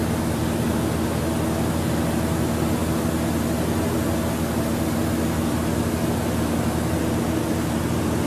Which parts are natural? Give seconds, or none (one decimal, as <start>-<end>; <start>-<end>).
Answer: 0.0-8.3